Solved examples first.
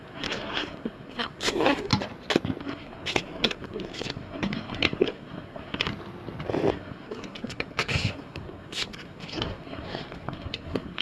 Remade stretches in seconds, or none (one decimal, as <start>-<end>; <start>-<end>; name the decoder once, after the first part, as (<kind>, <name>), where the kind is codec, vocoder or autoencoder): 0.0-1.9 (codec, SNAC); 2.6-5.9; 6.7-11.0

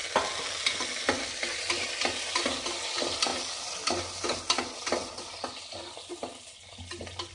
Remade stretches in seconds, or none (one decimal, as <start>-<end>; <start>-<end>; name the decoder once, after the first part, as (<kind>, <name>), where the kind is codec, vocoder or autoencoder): none

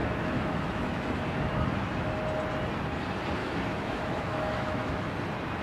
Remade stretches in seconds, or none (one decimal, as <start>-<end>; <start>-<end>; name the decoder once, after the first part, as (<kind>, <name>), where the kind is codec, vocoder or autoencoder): 0.0-1.0 (autoencoder, DAC-VAE); 3.4-5.1

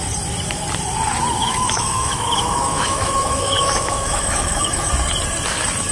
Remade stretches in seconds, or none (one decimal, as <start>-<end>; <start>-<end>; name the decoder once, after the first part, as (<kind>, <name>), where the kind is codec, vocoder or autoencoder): 1.4-4.9 (autoencoder, DAC-VAE)

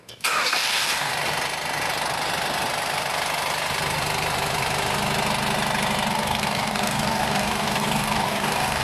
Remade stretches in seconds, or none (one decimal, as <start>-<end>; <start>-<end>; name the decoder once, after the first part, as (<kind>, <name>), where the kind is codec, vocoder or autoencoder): 0.0-1.1 (codec, DAC); 6.1-8.8

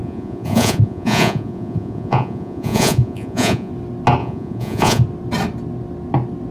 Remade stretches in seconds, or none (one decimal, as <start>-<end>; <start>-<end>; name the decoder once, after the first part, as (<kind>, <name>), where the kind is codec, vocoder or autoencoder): 0.0-3.7 (vocoder, Vocos); 4.2-5.0

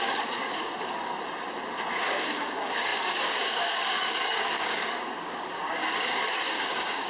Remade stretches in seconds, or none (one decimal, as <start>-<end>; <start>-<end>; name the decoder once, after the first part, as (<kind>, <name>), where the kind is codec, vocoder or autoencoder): 0.0-0.7 (codec, DAC); 1.9-7.1

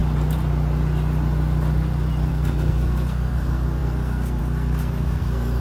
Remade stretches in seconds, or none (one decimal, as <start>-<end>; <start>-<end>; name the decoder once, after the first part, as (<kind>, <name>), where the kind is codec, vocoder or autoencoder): 2.3-5.6 (codec, SNAC)